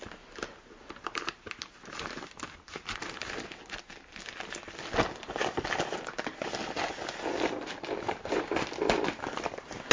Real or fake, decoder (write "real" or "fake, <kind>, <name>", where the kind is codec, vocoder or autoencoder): real